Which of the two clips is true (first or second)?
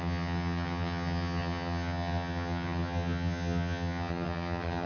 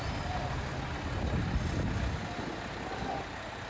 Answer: second